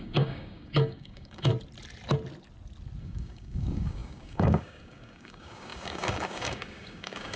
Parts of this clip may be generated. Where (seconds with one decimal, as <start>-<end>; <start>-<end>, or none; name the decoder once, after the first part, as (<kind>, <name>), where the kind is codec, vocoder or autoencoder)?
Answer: 0.0-1.5 (codec, DAC); 3.0-7.4